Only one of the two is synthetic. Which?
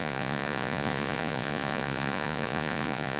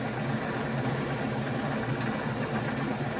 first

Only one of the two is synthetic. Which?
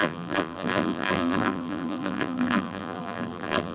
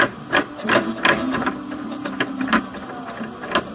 first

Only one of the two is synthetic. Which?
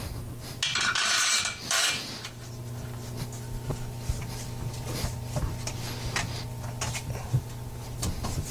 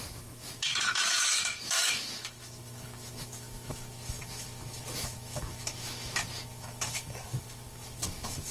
second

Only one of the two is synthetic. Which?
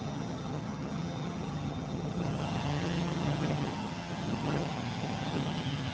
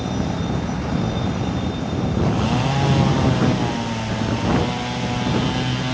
first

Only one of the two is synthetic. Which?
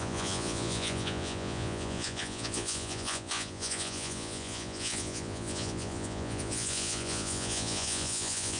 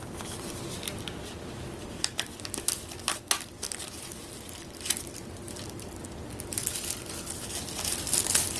first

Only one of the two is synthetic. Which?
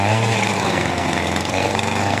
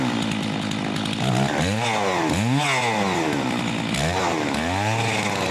first